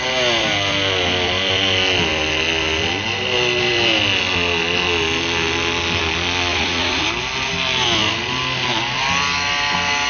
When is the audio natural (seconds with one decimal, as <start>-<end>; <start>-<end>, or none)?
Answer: 0.0-6.5; 7.0-10.1